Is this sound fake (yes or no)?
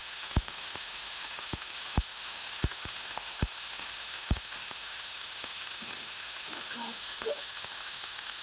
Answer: yes